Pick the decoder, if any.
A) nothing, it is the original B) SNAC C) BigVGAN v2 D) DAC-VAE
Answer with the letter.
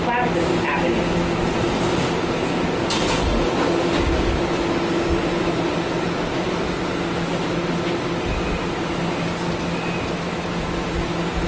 A